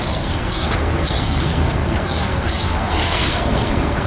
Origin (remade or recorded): remade